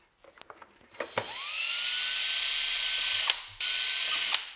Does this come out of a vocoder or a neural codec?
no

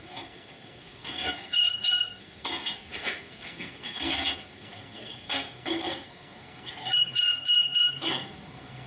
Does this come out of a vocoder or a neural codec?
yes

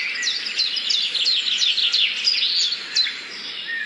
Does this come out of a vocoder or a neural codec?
no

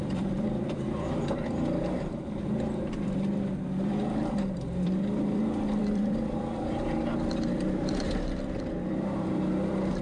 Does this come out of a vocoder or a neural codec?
yes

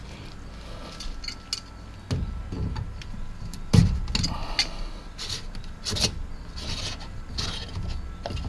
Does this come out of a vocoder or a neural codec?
no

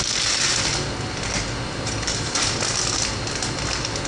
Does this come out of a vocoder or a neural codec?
no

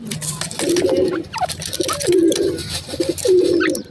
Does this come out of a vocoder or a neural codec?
no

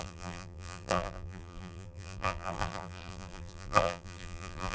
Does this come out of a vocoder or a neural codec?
yes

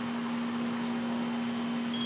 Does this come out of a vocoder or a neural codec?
no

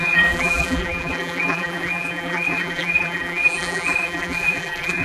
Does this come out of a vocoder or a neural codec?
yes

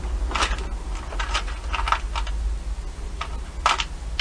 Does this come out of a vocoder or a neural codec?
no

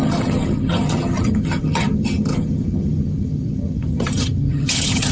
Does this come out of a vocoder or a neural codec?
yes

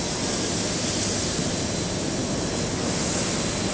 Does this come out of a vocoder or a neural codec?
no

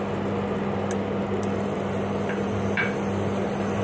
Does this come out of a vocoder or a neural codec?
yes